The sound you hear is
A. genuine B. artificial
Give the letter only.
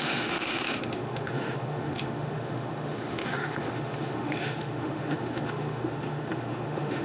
B